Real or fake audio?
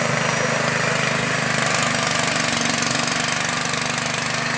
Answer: real